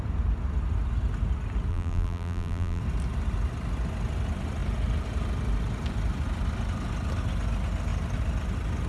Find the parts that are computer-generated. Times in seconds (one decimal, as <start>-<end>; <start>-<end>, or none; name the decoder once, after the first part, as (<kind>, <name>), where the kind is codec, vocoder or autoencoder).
1.7-2.8 (vocoder, BigVGAN v2)